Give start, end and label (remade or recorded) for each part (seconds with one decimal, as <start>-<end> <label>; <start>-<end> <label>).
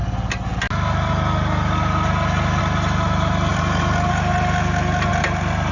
0.0-3.5 recorded; 3.5-4.1 remade; 4.1-5.1 recorded; 5.1-5.7 remade